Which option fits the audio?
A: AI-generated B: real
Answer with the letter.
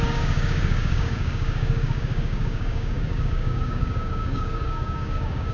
A